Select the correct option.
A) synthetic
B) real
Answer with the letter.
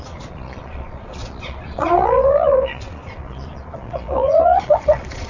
A